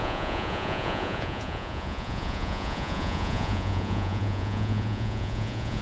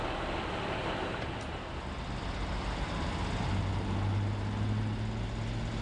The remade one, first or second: first